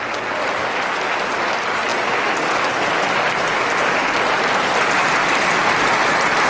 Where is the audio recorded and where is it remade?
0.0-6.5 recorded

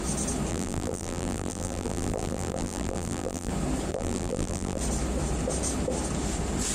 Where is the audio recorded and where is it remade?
0.0-0.5 recorded; 0.5-3.5 remade; 3.5-3.9 recorded; 3.9-4.8 remade; 4.8-6.7 recorded

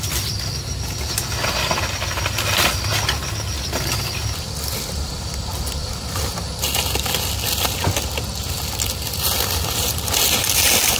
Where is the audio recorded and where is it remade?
0.0-11.0 recorded